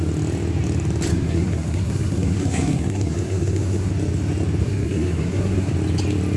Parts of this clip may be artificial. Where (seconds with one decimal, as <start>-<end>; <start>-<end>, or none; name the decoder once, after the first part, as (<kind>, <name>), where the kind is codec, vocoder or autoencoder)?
1.1-3.9 (codec, SNAC); 4.6-5.7